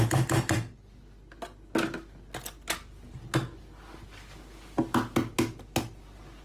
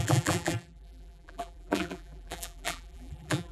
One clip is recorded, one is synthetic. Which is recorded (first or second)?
first